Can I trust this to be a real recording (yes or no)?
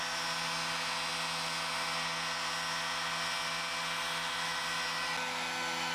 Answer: yes